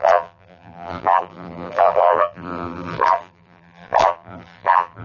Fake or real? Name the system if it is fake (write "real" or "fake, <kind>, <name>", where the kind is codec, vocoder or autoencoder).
fake, vocoder, BigVGAN v2